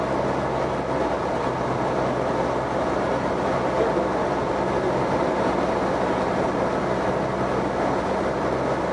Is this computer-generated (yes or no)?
no